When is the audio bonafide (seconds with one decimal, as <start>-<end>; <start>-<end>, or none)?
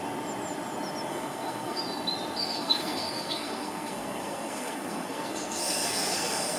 0.0-1.1; 1.8-2.4